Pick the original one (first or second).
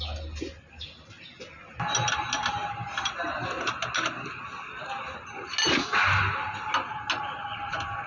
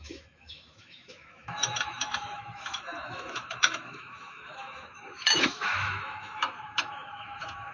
first